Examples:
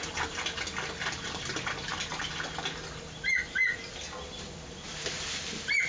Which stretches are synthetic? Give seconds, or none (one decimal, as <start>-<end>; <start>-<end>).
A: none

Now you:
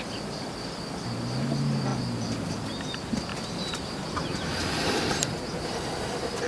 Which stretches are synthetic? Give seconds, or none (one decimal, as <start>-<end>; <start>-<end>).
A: 3.3-5.1

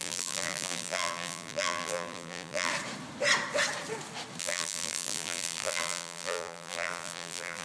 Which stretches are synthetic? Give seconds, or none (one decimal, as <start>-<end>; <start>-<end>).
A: 0.0-2.7; 4.4-7.6